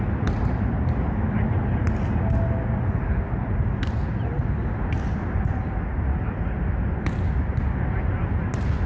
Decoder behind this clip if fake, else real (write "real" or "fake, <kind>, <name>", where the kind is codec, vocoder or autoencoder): real